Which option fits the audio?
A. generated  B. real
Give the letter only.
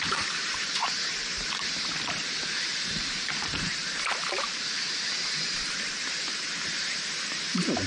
A